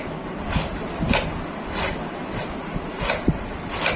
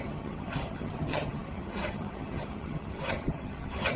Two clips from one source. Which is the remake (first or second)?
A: second